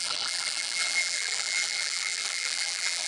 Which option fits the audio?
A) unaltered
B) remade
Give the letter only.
B